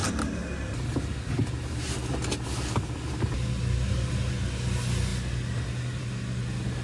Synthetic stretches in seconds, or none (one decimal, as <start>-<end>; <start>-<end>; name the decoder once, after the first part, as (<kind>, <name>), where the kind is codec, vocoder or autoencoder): none